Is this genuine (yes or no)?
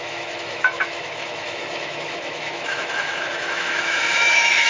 no